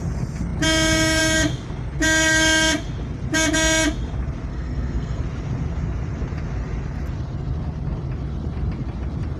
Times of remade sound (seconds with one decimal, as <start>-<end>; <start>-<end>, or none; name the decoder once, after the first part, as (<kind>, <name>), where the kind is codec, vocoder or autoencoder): 4.5-5.2 (codec, SNAC)